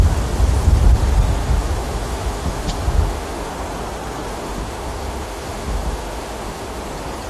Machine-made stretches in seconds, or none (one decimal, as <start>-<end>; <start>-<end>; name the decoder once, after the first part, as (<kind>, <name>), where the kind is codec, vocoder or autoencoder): 1.4-3.5 (autoencoder, DAC-VAE); 4.3-6.8